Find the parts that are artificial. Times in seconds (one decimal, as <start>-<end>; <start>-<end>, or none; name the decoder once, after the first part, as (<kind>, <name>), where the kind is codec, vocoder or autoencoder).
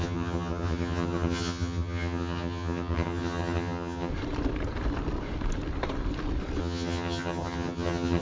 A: 0.0-4.1 (vocoder, HiFi-GAN); 6.6-8.2